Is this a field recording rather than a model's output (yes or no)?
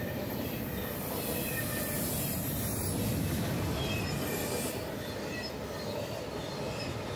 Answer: yes